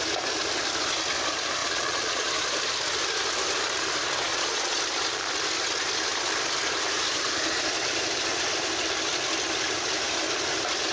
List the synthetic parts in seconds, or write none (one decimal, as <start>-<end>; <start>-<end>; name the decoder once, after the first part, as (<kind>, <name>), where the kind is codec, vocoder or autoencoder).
1.6-2.3 (vocoder, Vocos); 4.3-4.8